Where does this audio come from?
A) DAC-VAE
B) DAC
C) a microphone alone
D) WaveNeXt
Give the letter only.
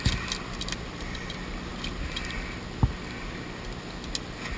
C